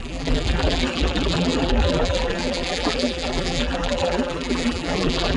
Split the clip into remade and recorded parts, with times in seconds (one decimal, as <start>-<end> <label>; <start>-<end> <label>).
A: 0.0-5.4 remade